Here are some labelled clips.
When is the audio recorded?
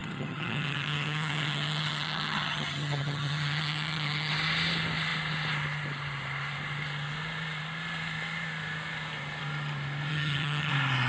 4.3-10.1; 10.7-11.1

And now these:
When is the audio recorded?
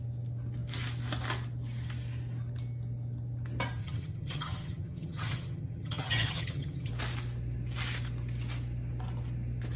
0.0-3.8; 6.9-9.8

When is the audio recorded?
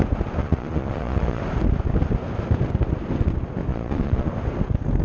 0.0-0.4; 1.4-3.7; 4.3-5.0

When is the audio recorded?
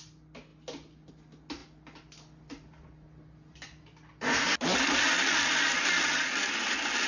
0.0-7.1